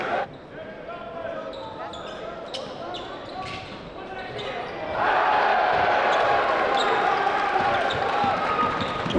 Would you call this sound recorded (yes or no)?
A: yes